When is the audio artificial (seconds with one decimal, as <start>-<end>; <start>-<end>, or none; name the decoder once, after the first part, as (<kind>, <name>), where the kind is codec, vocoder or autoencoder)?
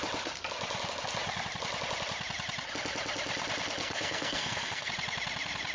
3.8-4.9 (codec, SNAC)